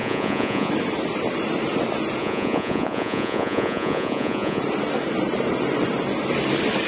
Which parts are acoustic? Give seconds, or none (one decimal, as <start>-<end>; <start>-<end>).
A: 0.7-2.2; 4.6-6.9